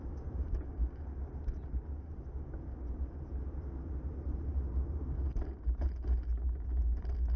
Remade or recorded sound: recorded